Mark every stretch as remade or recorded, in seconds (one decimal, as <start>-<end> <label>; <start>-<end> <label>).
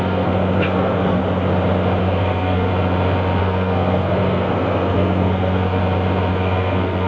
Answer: 0.0-1.2 remade; 1.2-2.0 recorded; 2.0-2.7 remade; 2.7-3.4 recorded; 3.4-5.8 remade; 5.8-6.3 recorded; 6.3-7.1 remade